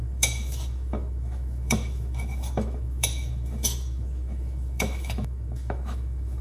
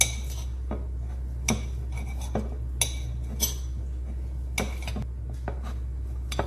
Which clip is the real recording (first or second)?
second